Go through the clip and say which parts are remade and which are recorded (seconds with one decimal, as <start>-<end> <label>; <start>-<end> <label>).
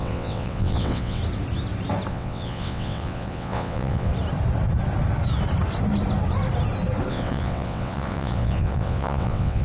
0.0-1.2 remade; 1.2-2.1 recorded; 2.1-4.1 remade; 4.1-7.1 recorded; 7.1-9.6 remade